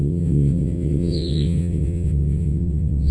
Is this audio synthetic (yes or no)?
yes